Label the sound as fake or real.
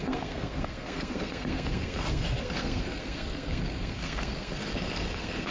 fake